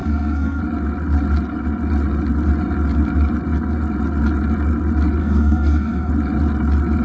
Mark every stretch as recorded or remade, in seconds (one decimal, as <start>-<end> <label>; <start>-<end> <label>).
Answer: 0.0-0.6 remade; 0.6-5.2 recorded; 5.2-6.1 remade; 6.1-7.0 recorded

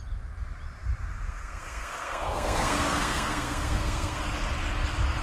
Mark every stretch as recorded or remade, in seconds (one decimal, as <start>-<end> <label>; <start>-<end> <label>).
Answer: 0.0-1.1 recorded; 1.1-4.2 remade; 4.2-5.2 recorded

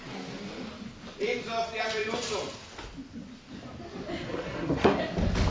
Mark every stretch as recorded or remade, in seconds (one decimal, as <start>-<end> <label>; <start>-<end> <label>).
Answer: 0.0-4.3 recorded; 4.3-5.0 remade; 5.0-5.5 recorded